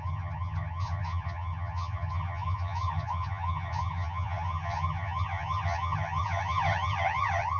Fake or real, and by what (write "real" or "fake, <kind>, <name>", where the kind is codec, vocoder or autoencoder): fake, vocoder, HiFi-GAN